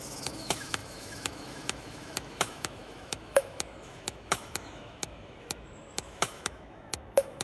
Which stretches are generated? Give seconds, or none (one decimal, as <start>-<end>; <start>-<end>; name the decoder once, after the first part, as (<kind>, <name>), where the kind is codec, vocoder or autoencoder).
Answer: 0.0-7.4 (autoencoder, DAC-VAE)